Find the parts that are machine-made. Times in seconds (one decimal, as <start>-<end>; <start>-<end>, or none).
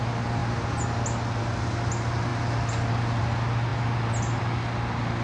none